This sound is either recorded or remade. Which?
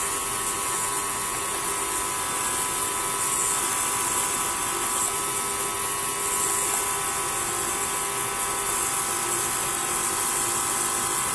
recorded